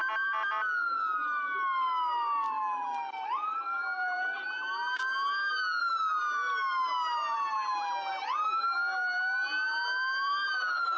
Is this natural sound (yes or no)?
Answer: yes